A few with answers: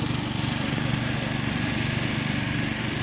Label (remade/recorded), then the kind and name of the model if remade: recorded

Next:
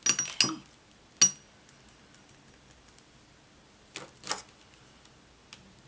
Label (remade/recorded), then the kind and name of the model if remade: recorded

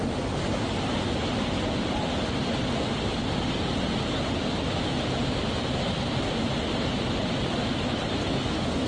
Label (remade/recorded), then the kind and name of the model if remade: recorded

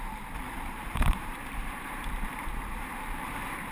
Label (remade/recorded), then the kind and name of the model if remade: remade, vocoder, BigVGAN v2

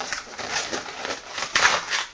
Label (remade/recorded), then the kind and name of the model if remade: remade, vocoder, BigVGAN v2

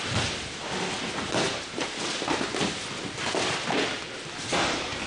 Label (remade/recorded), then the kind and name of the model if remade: recorded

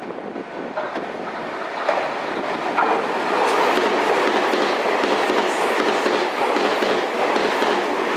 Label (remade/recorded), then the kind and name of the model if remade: recorded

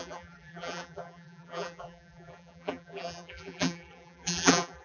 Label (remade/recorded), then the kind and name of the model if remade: remade, vocoder, BigVGAN v2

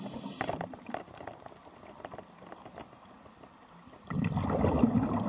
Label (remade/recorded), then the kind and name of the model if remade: recorded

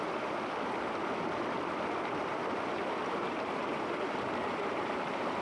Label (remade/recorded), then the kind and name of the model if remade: remade, vocoder, BigVGAN v2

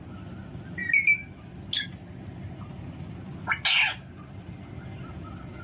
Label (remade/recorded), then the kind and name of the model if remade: recorded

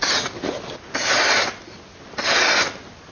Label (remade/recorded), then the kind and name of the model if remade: recorded